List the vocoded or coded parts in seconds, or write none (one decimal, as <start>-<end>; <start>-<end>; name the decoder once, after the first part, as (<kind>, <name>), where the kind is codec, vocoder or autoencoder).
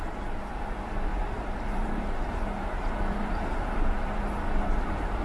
1.1-4.2 (vocoder, BigVGAN v2)